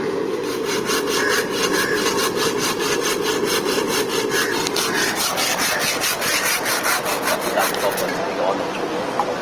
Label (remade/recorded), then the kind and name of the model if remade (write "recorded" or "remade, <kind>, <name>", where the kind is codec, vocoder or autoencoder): recorded